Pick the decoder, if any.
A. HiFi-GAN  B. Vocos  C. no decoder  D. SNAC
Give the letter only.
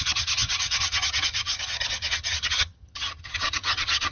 A